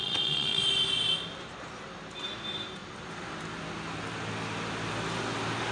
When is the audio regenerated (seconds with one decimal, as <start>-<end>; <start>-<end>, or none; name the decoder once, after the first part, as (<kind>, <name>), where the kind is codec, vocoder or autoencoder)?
0.0-0.6 (vocoder, Vocos)